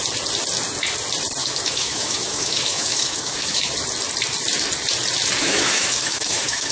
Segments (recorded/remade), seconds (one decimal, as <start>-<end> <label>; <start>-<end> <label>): 0.0-1.4 recorded; 1.4-3.7 remade; 3.7-5.4 recorded; 5.4-6.7 remade